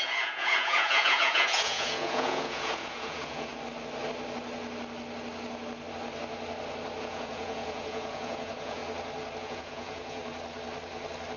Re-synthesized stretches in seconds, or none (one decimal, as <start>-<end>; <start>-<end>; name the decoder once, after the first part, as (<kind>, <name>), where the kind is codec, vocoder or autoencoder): 0.0-3.5 (vocoder, Vocos); 7.0-8.8; 9.4-10.2